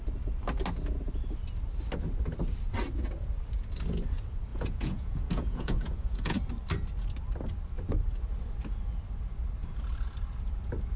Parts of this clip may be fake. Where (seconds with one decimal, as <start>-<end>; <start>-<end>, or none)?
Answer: 4.5-6.4